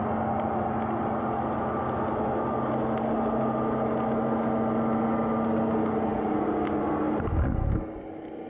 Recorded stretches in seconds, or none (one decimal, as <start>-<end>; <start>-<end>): 0.0-8.5